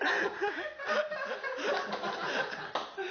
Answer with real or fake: real